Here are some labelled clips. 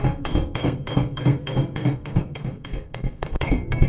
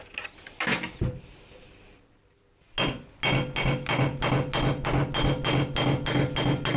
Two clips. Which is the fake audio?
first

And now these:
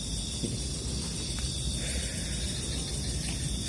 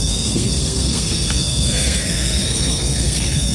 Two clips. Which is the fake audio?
second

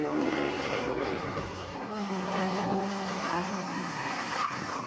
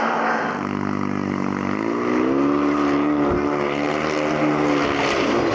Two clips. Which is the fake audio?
first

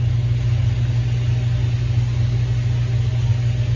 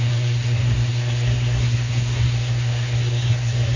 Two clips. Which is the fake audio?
second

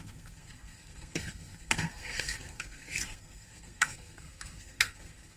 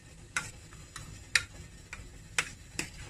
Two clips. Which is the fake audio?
first